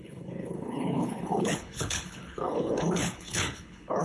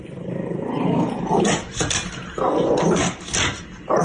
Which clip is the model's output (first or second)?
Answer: first